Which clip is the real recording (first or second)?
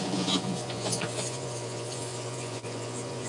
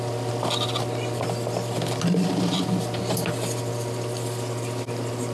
second